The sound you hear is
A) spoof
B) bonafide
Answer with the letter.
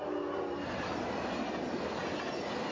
B